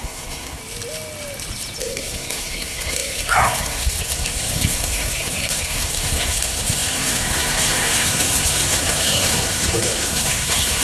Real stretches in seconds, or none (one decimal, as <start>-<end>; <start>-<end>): 0.6-1.8